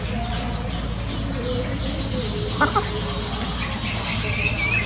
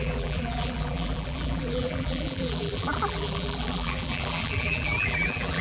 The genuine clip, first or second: first